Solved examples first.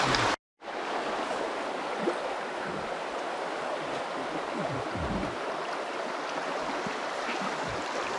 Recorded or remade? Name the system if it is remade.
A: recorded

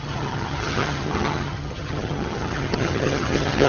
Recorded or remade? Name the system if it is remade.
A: remade, vocoder, HiFi-GAN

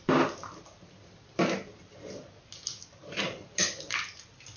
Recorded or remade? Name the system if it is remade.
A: recorded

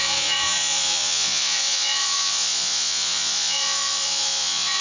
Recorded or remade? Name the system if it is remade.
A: remade, vocoder, Vocos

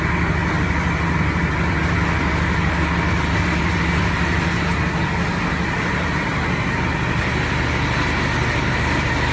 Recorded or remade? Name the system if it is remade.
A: recorded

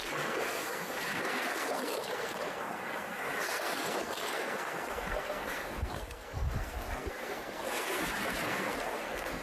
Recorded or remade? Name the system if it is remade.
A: remade, codec, SNAC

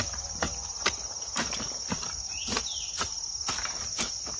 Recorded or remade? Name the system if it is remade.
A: remade, vocoder, BigVGAN v2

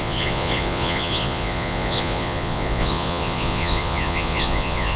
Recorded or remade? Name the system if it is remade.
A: remade, vocoder, Vocos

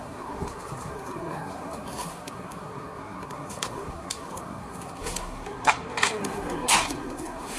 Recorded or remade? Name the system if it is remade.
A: remade, codec, SNAC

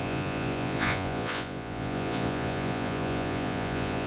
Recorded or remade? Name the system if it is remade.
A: remade, vocoder, Vocos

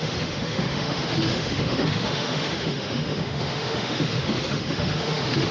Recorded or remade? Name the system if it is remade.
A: remade, autoencoder, DAC-VAE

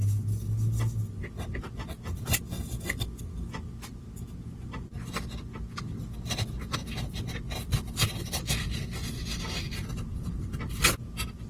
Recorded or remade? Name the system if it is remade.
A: recorded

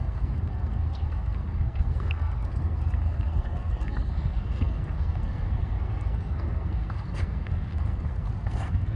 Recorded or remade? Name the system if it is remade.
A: remade, codec, SNAC